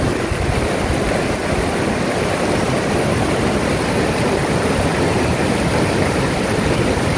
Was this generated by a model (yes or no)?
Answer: no